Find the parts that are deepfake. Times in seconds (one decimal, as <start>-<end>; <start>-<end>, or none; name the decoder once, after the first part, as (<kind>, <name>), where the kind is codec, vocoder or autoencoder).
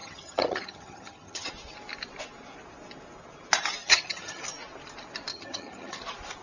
0.0-1.5 (vocoder, HiFi-GAN); 3.8-4.4; 5.3-6.0